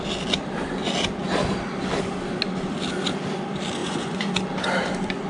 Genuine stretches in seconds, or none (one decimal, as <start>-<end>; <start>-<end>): 0.0-3.8; 4.3-5.3